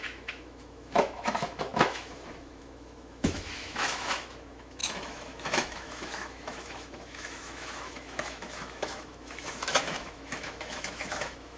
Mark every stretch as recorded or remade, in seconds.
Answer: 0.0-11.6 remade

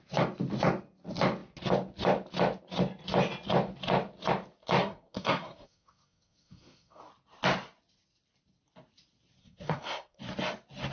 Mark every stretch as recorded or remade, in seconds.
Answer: 0.0-4.8 recorded; 4.8-7.0 remade; 7.0-9.4 recorded; 9.4-10.2 remade; 10.2-10.9 recorded

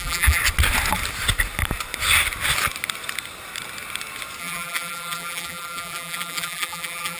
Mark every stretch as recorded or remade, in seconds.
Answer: 0.0-0.4 remade; 0.4-4.4 recorded; 4.4-7.2 remade